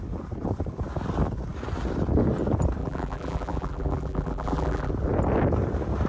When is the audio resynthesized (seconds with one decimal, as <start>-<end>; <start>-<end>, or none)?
2.8-4.9